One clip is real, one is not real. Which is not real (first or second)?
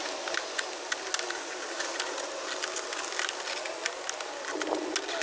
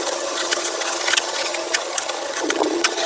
second